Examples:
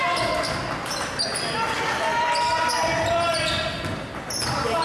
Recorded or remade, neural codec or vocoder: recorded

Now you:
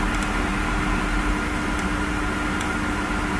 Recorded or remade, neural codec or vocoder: recorded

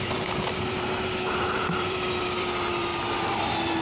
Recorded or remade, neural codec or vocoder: remade, vocoder, BigVGAN v2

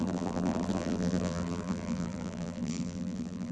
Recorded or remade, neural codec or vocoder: remade, vocoder, BigVGAN v2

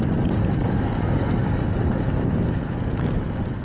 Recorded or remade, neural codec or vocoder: recorded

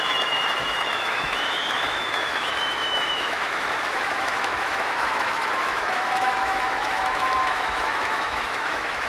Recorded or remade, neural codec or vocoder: remade, autoencoder, DAC-VAE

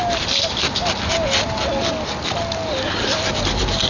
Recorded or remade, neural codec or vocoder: recorded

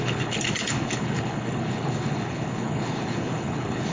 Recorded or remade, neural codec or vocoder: remade, codec, HILCodec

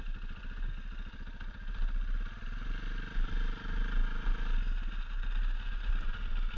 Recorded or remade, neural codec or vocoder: recorded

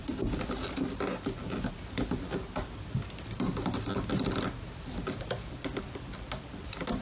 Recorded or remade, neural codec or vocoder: recorded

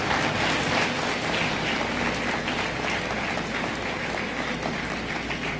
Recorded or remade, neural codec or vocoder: recorded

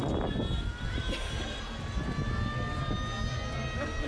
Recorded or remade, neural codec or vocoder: recorded